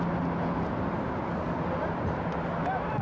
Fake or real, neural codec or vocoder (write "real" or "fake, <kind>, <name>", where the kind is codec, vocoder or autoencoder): real